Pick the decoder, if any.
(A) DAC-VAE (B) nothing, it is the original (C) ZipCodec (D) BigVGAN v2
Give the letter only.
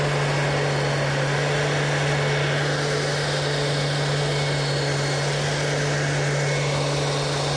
B